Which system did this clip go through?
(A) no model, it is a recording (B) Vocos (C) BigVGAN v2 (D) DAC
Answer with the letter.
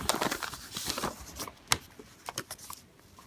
C